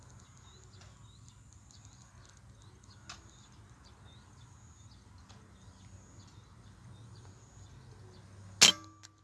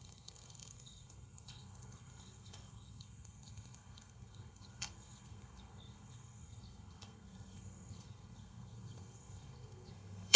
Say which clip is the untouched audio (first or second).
first